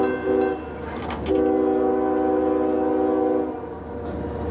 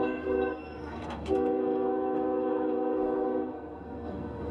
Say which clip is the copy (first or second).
second